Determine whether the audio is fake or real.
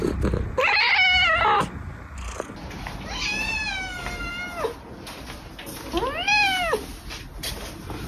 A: real